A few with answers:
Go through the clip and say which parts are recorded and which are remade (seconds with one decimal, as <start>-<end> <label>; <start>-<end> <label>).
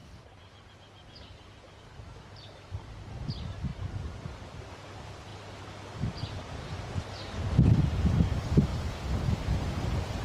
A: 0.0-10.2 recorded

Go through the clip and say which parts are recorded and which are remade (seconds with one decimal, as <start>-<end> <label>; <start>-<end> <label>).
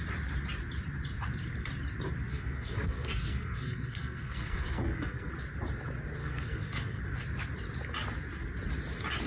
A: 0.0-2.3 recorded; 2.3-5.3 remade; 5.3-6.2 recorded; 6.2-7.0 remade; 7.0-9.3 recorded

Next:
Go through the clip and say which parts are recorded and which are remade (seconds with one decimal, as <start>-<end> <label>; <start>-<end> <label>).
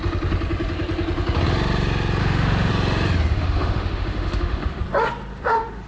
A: 0.0-2.2 recorded; 2.2-2.7 remade; 2.7-3.3 recorded; 3.3-4.8 remade; 4.8-5.3 recorded; 5.3-5.9 remade